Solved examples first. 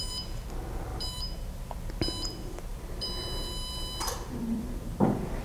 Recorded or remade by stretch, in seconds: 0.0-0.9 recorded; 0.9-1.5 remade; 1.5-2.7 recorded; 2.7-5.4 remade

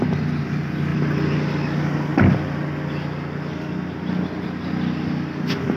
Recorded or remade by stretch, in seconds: 0.0-5.8 recorded

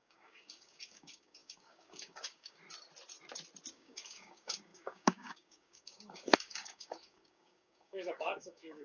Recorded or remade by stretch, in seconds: 0.0-2.6 remade; 2.6-3.7 recorded; 3.7-8.8 remade

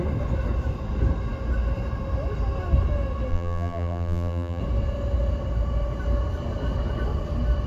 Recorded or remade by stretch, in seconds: 0.0-3.3 recorded; 3.3-4.6 remade; 4.6-7.7 recorded

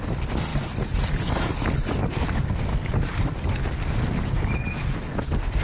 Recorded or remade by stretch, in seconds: 0.0-5.6 recorded

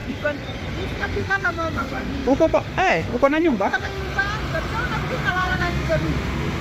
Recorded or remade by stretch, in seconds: 0.0-1.0 recorded; 1.0-4.0 remade; 4.0-5.3 recorded; 5.3-6.6 remade

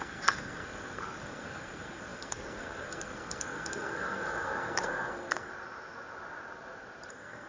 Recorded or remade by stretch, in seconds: 0.0-5.5 remade; 5.5-7.1 recorded; 7.1-7.5 remade

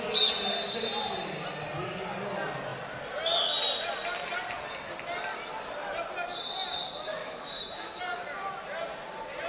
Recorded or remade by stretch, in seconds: 0.0-7.2 recorded; 7.2-8.0 remade; 8.0-9.5 recorded